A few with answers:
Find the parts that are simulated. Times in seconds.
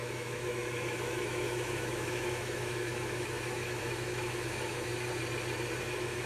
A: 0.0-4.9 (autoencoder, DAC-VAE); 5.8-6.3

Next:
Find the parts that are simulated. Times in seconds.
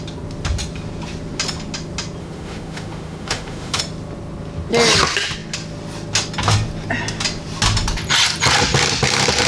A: 2.2-3.8 (autoencoder, DAC-VAE)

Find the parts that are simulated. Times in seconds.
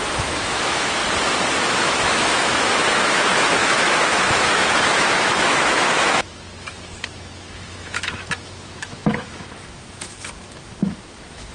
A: 0.0-1.0 (autoencoder, DAC-VAE); 1.8-11.5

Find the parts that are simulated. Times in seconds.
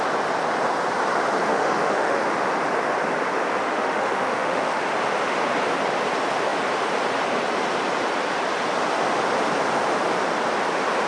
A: 1.5-2.2 (autoencoder, DAC-VAE); 3.6-4.8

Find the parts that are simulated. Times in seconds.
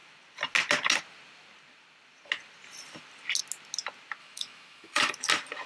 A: 4.2-5.1 (autoencoder, DAC-VAE)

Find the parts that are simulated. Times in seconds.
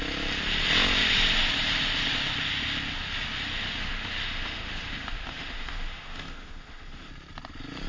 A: 3.5-7.1 (autoencoder, DAC-VAE)